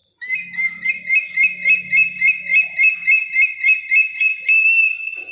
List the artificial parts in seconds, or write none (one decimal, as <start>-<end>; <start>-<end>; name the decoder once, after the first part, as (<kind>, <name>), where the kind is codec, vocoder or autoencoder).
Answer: 0.0-0.9 (vocoder, BigVGAN v2)